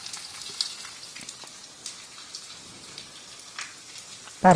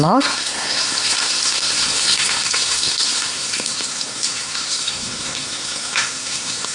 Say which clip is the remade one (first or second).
second